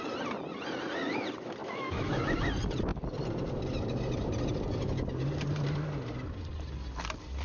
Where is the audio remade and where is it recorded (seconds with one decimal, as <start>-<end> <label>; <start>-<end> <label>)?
0.0-1.6 recorded; 1.6-2.5 remade; 2.5-7.4 recorded